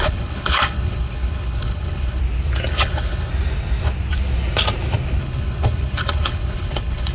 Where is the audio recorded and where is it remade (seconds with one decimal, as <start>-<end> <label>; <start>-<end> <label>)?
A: 0.0-2.2 remade; 2.2-2.7 recorded; 2.7-3.3 remade; 3.3-5.2 recorded; 5.2-7.1 remade